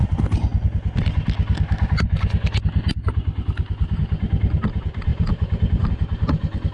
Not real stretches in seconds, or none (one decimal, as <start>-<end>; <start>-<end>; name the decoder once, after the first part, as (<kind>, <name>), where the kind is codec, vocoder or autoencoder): 5.1-5.9 (vocoder, BigVGAN v2)

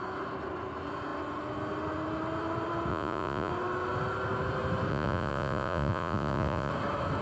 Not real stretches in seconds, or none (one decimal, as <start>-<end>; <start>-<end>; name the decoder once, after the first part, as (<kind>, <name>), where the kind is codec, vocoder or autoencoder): 2.9-3.5 (vocoder, Vocos); 4.9-6.7

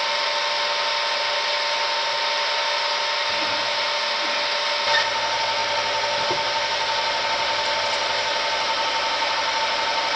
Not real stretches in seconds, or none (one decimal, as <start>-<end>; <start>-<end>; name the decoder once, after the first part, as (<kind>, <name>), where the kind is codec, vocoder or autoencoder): none